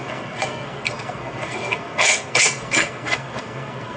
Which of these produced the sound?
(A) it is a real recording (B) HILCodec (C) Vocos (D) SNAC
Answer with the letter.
D